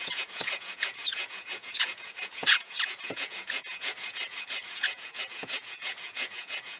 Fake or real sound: fake